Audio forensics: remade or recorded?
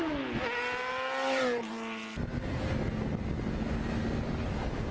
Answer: recorded